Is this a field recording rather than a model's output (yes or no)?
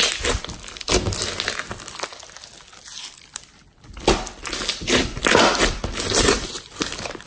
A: yes